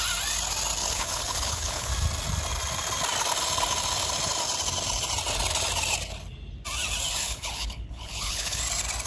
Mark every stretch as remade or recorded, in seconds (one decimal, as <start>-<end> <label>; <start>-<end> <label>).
0.0-0.8 recorded; 0.8-1.9 remade; 1.9-7.2 recorded; 7.2-8.6 remade; 8.6-9.1 recorded